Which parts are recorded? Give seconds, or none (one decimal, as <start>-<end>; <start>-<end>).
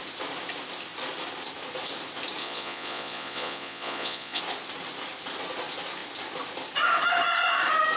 0.0-2.4; 4.4-8.0